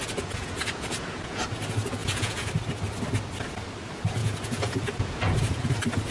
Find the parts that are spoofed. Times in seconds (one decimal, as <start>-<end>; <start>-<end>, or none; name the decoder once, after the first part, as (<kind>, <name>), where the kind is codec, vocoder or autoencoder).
0.0-1.4 (vocoder, Vocos); 2.0-2.5; 4.2-5.6